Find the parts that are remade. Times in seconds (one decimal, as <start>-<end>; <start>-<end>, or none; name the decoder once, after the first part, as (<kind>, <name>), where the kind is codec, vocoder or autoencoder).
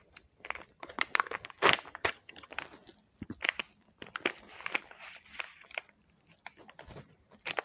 2.0-2.5 (vocoder, HiFi-GAN)